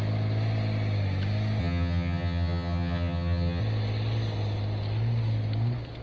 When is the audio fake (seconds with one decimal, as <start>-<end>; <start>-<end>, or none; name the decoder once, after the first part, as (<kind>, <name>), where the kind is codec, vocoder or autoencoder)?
1.6-3.6 (vocoder, HiFi-GAN)